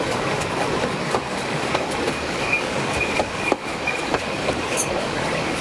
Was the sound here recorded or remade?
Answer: remade